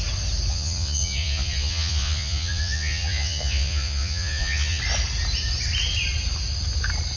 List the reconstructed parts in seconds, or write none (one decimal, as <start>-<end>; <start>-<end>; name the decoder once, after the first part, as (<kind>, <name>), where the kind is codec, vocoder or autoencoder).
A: 0.5-4.8 (vocoder, Vocos)